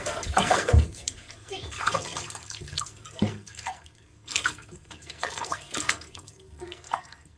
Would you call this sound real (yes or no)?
no